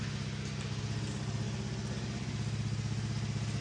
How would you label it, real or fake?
real